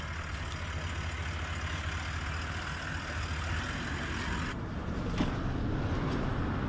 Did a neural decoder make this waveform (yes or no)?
no